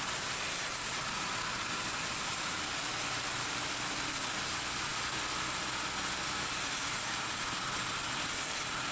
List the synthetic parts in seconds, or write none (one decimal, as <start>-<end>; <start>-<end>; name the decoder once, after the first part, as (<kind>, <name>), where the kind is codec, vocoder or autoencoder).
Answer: none